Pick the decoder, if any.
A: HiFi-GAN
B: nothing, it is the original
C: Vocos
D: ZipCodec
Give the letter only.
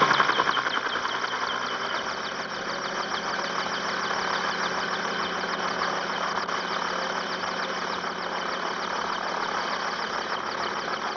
B